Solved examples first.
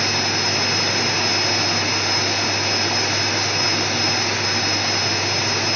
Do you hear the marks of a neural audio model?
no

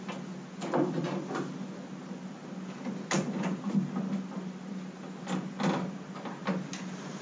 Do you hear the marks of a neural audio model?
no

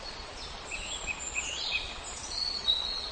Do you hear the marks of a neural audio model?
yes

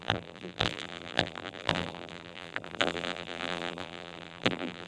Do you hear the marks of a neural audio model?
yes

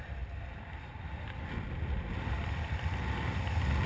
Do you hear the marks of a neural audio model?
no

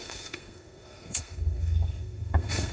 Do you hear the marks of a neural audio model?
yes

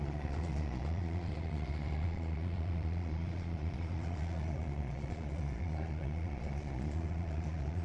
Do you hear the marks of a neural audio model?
yes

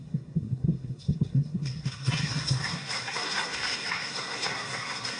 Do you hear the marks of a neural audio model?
yes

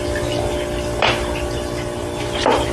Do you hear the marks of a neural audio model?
no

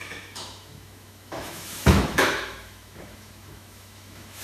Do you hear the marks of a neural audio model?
yes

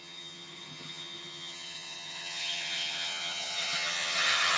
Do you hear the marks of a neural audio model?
yes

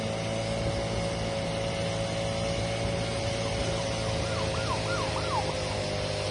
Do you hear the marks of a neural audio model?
no